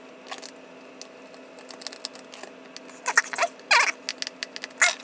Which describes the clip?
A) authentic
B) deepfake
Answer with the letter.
A